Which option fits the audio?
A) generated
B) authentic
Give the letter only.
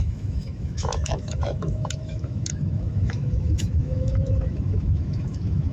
A